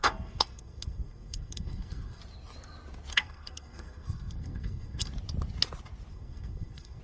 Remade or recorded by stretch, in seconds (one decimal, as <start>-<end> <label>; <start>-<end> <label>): 0.0-2.2 remade; 2.2-3.1 recorded; 3.1-5.1 remade; 5.1-6.1 recorded; 6.1-7.0 remade